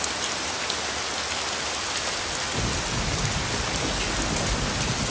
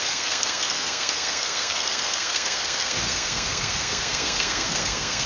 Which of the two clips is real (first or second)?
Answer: first